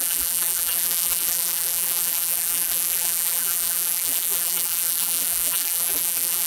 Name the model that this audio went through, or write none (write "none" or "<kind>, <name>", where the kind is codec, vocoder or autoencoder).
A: vocoder, BigVGAN v2